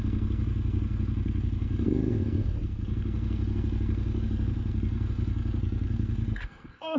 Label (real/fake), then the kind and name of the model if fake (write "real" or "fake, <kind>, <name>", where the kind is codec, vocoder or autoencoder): fake, codec, SNAC